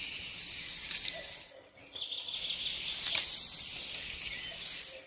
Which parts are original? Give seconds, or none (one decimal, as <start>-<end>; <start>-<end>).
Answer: 0.0-5.1